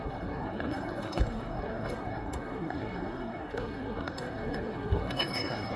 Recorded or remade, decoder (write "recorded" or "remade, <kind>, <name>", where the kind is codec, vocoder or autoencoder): remade, codec, SNAC